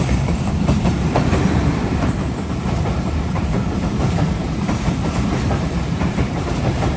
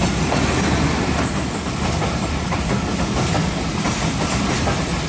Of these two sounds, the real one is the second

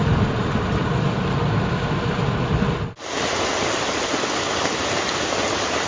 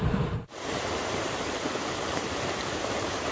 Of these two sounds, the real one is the first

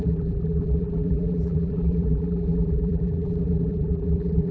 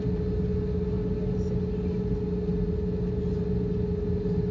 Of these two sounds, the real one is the second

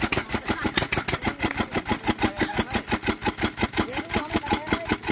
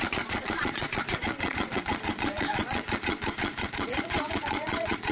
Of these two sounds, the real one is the first